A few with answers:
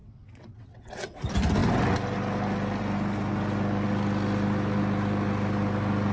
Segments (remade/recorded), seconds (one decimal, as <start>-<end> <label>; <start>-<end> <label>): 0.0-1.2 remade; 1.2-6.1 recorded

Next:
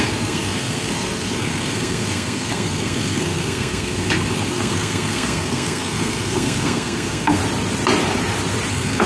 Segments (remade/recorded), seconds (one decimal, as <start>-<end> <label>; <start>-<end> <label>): 0.0-7.4 remade; 7.4-8.7 recorded; 8.7-9.1 remade

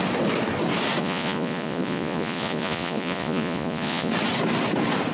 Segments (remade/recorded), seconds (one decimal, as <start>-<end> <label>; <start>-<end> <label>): 0.0-1.0 recorded; 1.0-4.1 remade; 4.1-5.1 recorded